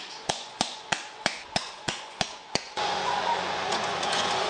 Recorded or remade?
remade